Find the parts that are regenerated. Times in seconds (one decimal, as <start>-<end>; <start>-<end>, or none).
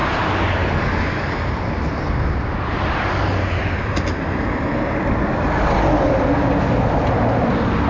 none